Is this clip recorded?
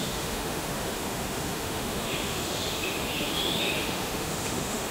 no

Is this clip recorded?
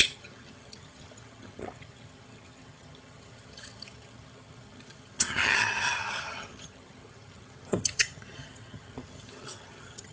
no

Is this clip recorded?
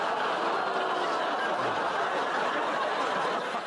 yes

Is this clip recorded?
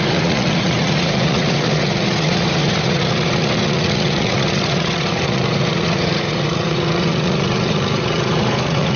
no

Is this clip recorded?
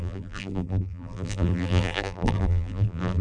no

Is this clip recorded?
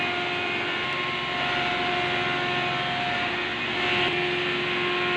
yes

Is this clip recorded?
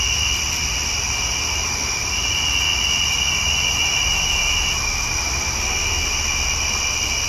yes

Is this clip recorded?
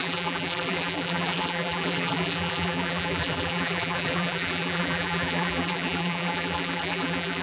no